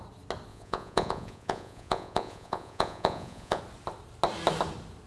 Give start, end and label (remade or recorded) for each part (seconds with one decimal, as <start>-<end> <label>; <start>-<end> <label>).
0.0-0.5 recorded; 0.5-3.6 remade; 3.6-5.1 recorded